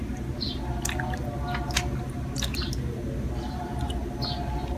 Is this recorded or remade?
recorded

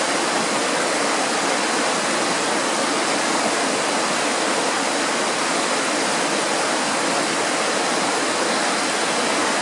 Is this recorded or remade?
recorded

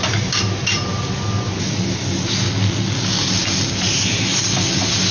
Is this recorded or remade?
recorded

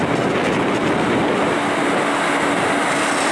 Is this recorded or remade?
recorded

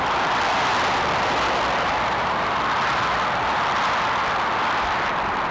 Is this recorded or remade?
recorded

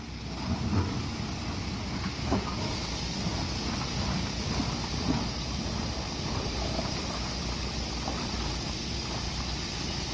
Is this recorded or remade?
recorded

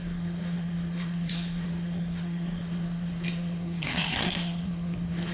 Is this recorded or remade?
remade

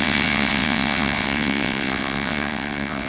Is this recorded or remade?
remade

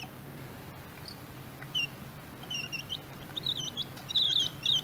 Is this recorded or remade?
recorded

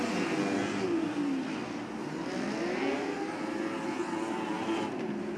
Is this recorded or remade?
recorded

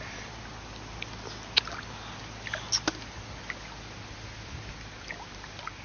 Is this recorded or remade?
recorded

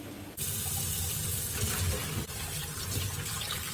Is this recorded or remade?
recorded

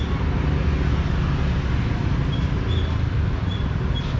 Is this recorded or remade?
recorded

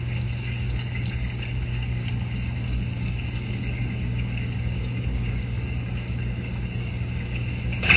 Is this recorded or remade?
remade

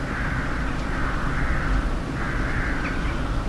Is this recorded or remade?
recorded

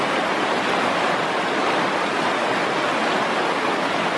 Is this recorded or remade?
recorded